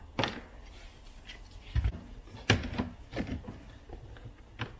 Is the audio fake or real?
real